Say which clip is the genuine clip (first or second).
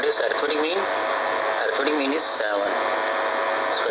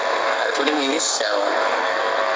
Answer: first